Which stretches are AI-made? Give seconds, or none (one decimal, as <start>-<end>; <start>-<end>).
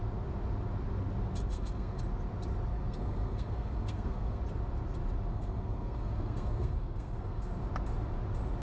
1.5-2.0; 2.7-4.4; 5.3-7.5